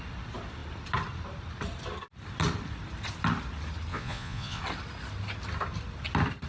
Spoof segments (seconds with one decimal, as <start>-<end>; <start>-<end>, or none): 3.9-4.6